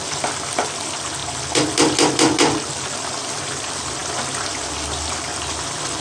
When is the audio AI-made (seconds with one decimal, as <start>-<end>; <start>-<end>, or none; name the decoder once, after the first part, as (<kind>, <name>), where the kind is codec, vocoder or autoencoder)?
none